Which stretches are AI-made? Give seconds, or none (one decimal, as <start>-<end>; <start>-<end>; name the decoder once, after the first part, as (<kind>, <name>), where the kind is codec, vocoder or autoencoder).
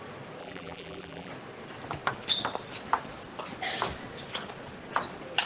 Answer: 0.4-1.3 (vocoder, BigVGAN v2)